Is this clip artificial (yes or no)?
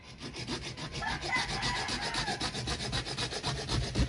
no